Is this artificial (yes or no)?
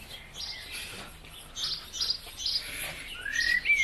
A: no